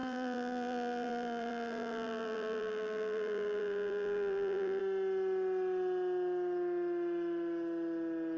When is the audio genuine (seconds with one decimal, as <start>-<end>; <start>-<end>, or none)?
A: 4.8-8.4